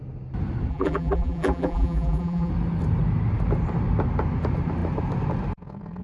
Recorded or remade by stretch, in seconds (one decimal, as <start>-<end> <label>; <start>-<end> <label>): 0.0-0.7 recorded; 0.7-2.5 remade; 2.5-6.0 recorded